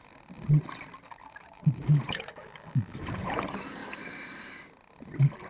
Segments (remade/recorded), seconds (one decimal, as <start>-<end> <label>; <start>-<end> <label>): 0.0-1.2 recorded; 1.2-3.3 remade; 3.3-5.5 recorded